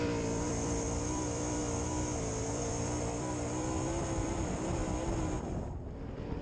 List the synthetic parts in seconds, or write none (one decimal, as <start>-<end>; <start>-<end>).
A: 0.0-1.6; 2.5-4.8; 6.0-6.4